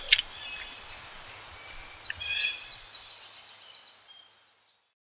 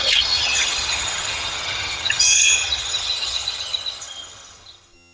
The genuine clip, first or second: first